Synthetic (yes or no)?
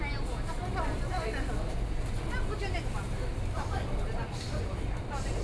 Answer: no